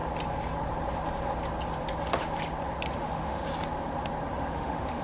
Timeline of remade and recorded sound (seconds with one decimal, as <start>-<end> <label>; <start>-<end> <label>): 0.0-3.0 recorded; 3.0-3.5 remade; 3.5-4.5 recorded; 4.5-5.0 remade